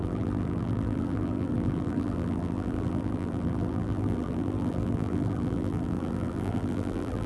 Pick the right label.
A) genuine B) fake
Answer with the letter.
B